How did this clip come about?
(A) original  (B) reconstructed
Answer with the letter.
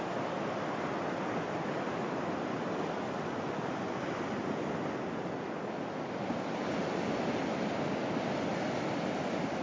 A